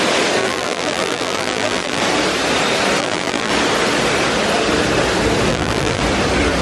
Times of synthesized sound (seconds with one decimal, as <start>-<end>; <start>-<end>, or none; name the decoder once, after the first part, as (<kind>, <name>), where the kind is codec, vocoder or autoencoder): 0.4-2.0 (vocoder, BigVGAN v2); 3.0-3.5; 5.5-6.0